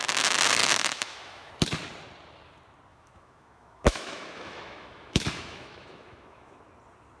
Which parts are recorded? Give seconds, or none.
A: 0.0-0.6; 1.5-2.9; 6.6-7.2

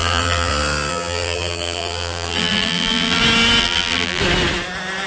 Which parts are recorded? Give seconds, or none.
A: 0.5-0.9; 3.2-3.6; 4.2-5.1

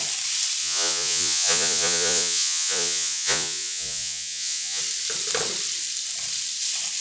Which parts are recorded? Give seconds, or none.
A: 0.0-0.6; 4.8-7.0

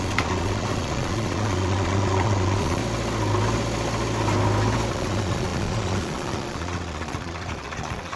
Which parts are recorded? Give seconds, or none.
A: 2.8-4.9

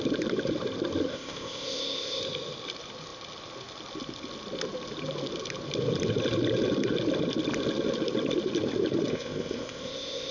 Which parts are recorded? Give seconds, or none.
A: 0.0-1.1; 2.2-9.1

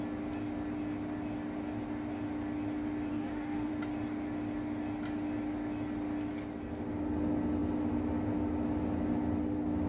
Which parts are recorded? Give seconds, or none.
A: 0.0-3.1; 3.7-9.9

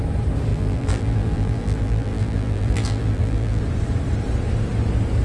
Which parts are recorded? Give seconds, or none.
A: 0.0-0.5; 3.6-5.2